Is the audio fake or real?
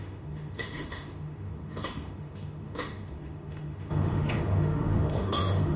fake